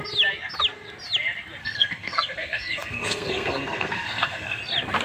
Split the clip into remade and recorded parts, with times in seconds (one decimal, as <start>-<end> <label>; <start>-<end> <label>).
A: 0.0-1.6 recorded; 1.6-4.6 remade; 4.6-5.0 recorded